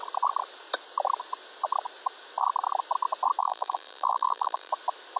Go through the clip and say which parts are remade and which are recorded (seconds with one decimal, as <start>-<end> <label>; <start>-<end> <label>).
0.0-3.4 recorded; 3.4-4.7 remade; 4.7-5.2 recorded